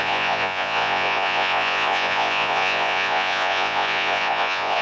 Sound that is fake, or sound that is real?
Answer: fake